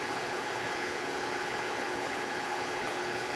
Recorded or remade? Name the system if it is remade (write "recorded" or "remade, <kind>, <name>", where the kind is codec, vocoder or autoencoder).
remade, codec, HILCodec